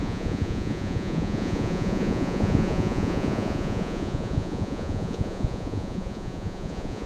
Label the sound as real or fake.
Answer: fake